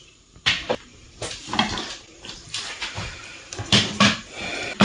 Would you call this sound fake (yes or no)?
no